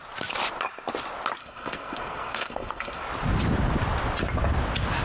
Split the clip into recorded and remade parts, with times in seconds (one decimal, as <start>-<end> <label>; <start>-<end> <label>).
0.0-1.4 recorded; 1.4-3.0 remade; 3.0-5.0 recorded